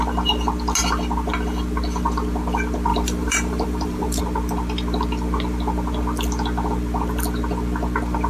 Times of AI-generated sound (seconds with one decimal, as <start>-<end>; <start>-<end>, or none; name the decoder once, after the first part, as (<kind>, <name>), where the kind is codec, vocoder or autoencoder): 2.9-4.2 (vocoder, BigVGAN v2)